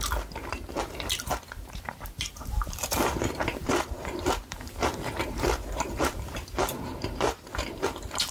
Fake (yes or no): yes